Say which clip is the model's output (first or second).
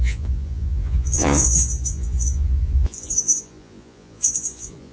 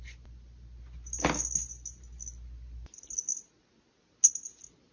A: first